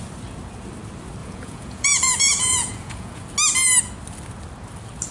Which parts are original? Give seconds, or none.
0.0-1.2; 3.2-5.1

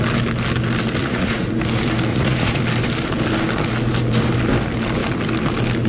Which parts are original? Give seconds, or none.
0.0-1.0; 1.5-2.1; 2.6-5.9